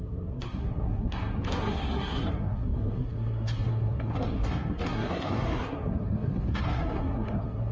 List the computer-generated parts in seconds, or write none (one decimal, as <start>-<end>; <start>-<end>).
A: 0.0-7.7